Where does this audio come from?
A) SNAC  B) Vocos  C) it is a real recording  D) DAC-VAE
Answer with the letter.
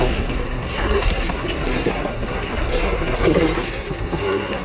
A